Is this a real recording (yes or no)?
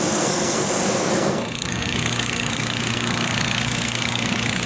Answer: no